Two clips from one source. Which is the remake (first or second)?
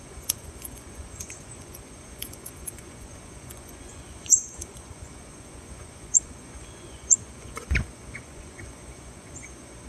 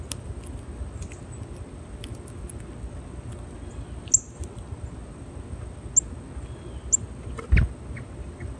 first